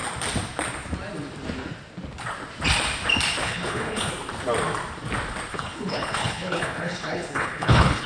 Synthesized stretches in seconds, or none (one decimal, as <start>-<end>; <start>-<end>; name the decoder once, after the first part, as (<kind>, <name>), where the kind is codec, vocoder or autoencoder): 3.4-4.1 (codec, HILCodec); 5.5-8.1